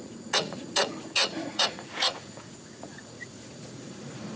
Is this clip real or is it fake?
fake